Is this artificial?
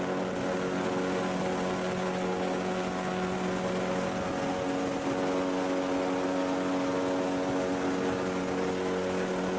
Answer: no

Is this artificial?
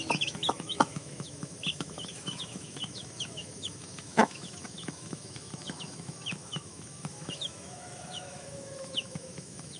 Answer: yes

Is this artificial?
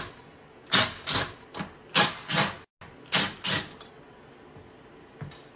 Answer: no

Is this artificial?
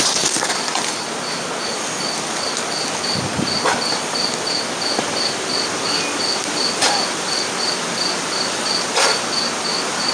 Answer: no